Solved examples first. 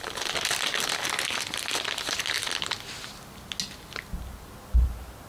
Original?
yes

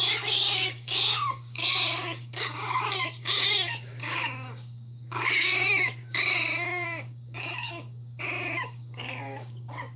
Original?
no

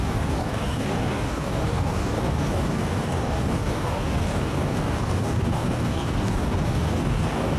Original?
no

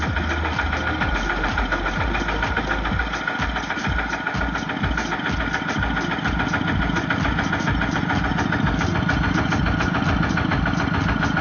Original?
yes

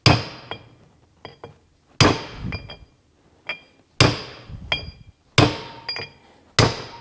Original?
yes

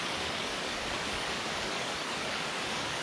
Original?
no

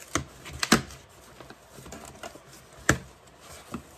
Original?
yes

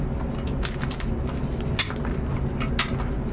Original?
yes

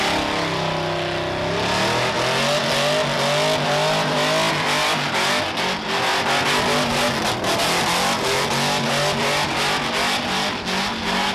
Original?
yes